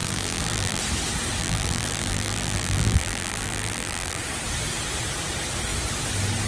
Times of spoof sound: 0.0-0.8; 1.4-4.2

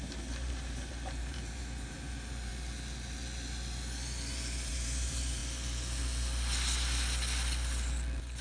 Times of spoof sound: 0.0-2.5; 4.7-5.4